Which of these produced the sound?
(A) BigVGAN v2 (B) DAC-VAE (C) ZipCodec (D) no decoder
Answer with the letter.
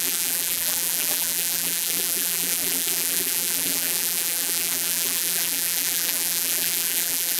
A